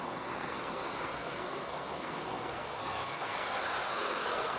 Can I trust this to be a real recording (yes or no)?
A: no